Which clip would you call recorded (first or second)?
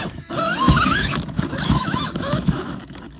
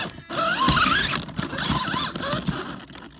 second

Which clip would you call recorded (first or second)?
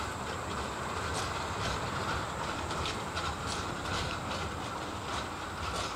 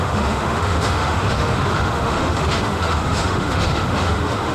first